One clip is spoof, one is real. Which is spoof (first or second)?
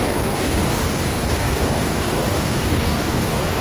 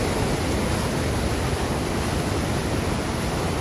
first